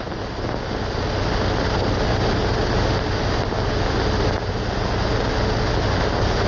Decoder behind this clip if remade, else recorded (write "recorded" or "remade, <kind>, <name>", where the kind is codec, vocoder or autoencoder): recorded